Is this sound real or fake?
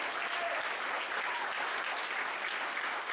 real